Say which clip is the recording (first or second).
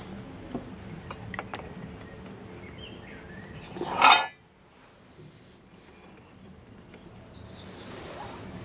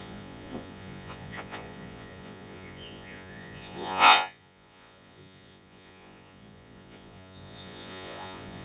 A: first